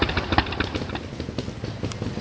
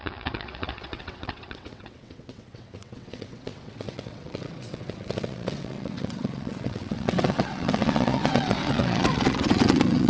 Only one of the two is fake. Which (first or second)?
second